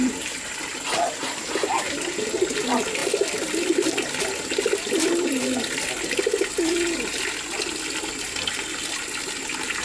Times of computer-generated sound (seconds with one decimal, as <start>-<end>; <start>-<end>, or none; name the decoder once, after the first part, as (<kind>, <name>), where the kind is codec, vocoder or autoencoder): none